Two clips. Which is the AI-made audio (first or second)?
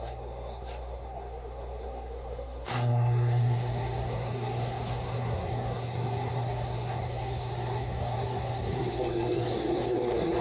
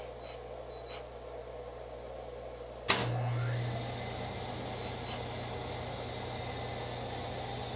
first